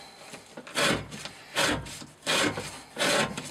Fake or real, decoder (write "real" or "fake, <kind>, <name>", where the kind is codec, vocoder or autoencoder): real